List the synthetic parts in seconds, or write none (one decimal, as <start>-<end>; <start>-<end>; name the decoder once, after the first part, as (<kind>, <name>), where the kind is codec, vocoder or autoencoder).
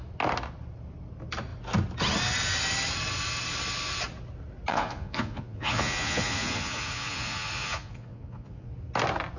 4.7-8.7 (vocoder, Vocos)